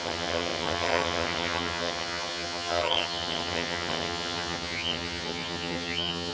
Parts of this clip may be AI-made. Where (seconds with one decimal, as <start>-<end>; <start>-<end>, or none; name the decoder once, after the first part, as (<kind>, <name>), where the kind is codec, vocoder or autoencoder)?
0.0-6.3 (vocoder, HiFi-GAN)